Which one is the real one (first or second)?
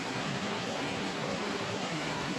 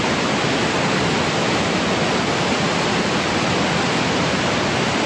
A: second